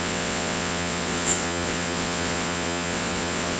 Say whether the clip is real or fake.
fake